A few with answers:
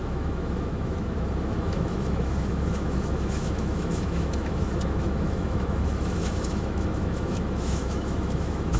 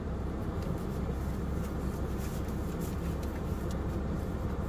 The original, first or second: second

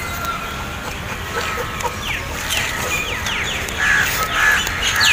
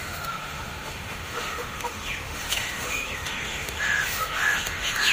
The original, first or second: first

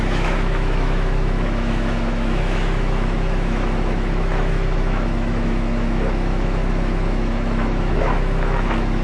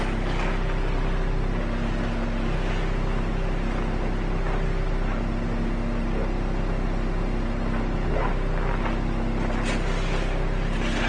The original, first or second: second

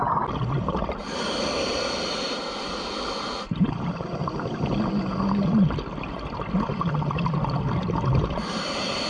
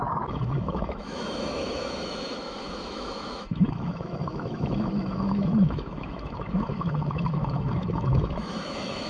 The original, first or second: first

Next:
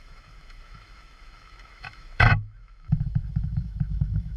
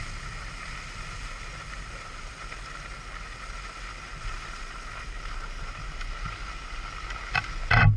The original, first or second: second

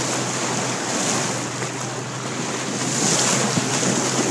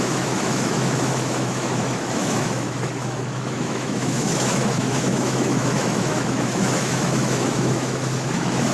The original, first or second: first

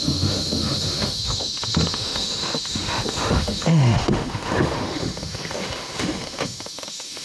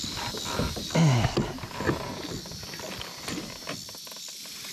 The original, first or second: second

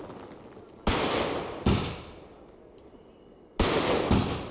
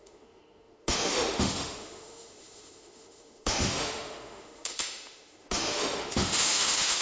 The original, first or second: first